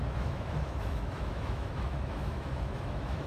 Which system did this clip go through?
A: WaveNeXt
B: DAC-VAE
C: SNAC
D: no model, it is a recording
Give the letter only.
B